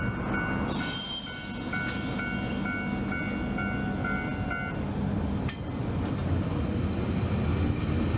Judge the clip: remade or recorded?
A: recorded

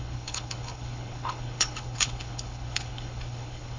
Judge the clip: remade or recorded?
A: remade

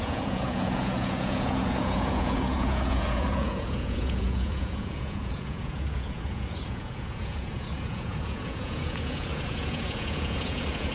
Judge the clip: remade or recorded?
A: remade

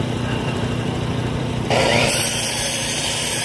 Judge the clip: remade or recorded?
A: remade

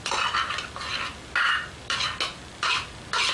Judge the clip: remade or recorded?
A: recorded